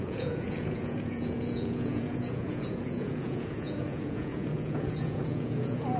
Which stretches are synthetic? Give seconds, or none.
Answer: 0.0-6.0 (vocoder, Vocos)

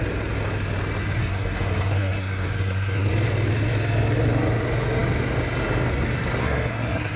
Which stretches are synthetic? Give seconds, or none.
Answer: 1.2-3.1 (codec, SNAC); 6.4-7.2

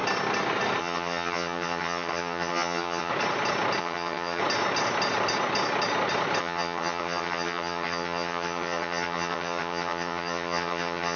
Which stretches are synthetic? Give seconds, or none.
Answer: 0.8-3.1 (vocoder, HiFi-GAN); 3.8-4.4; 6.4-11.2

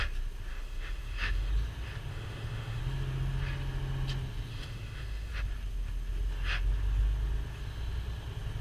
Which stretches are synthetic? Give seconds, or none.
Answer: 0.5-1.5 (autoencoder, DAC-VAE); 2.1-2.8; 4.5-5.3

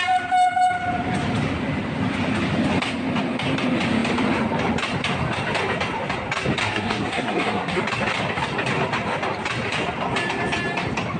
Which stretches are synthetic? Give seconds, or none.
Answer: 6.6-7.8 (codec, SNAC)